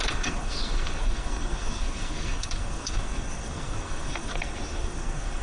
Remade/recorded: remade